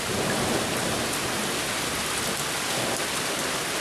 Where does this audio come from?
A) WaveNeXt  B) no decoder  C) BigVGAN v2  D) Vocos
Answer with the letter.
B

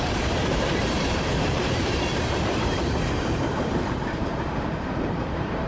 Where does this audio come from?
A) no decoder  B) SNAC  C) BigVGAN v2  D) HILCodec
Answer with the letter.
C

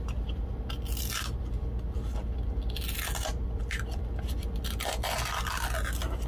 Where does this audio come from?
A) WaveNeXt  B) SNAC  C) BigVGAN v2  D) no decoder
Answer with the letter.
D